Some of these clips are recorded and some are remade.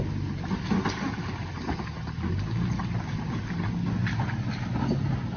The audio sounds recorded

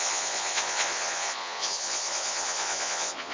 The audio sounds remade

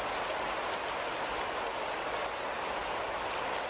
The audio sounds recorded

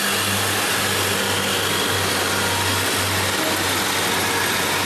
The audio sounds recorded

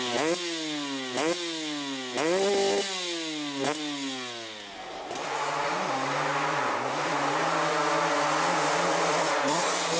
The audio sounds recorded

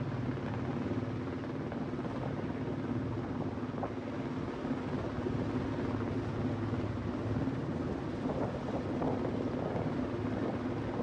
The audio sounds recorded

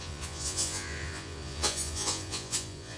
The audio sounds remade